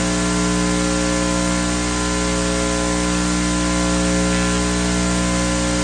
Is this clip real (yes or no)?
yes